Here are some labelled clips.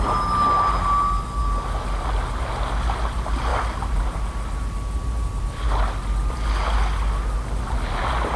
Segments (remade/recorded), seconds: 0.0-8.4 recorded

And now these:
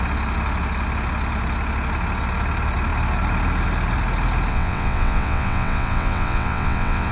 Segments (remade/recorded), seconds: 0.0-4.5 recorded; 4.5-7.1 remade

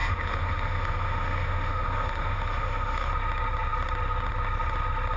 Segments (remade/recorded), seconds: 0.0-3.1 remade; 3.1-5.2 recorded

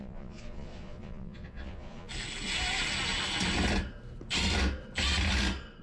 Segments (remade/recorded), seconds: 0.0-2.1 remade; 2.1-5.8 recorded

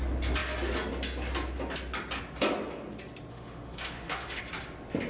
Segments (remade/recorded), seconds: 0.0-3.3 recorded; 3.3-4.4 remade; 4.4-5.1 recorded

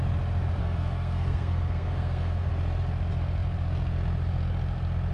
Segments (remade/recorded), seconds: 0.0-0.6 recorded; 0.6-2.5 remade; 2.5-5.1 recorded

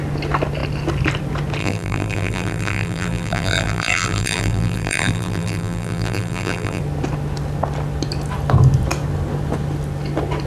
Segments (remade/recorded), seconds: 0.0-1.6 recorded; 1.6-6.8 remade; 6.8-10.5 recorded